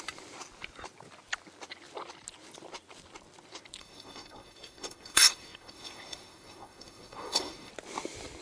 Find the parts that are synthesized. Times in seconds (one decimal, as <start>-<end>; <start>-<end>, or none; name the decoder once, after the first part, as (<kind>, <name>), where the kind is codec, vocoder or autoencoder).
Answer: 3.8-7.7 (codec, SNAC)